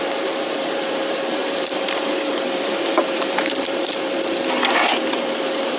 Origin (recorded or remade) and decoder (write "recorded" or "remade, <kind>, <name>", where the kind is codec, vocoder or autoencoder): remade, vocoder, BigVGAN v2